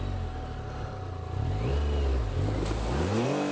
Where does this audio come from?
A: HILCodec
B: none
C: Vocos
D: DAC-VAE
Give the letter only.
B